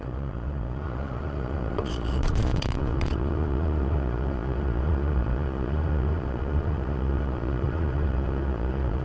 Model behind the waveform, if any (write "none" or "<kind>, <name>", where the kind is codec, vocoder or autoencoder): vocoder, Vocos